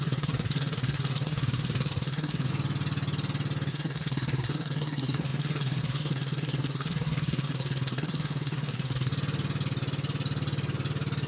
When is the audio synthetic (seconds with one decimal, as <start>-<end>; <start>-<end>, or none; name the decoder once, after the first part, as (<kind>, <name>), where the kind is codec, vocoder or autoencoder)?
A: 0.0-2.5 (codec, SNAC); 3.7-9.1